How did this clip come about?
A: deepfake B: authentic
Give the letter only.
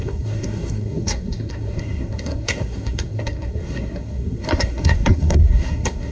A